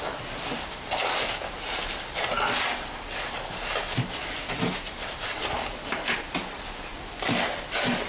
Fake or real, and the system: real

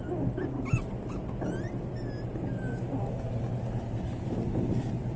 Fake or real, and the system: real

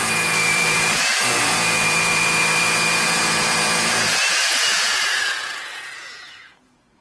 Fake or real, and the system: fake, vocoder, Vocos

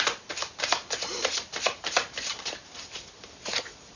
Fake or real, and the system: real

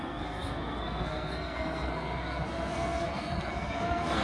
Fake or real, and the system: fake, codec, SNAC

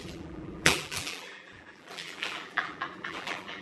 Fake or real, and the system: fake, vocoder, BigVGAN v2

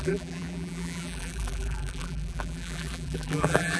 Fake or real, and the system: fake, vocoder, BigVGAN v2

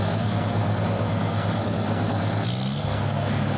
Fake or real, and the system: fake, codec, SNAC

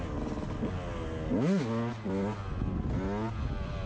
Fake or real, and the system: real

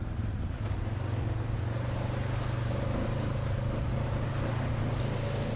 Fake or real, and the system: real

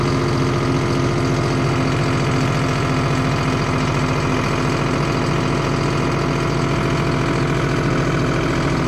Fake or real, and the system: real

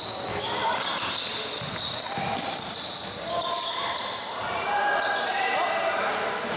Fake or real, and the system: real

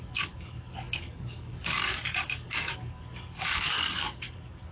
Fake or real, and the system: fake, codec, DAC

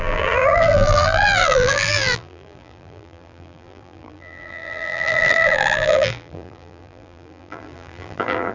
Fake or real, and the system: fake, vocoder, BigVGAN v2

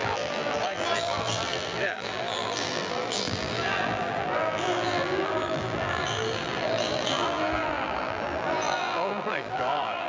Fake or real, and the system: fake, vocoder, BigVGAN v2